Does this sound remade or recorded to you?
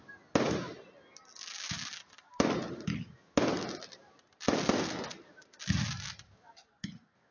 recorded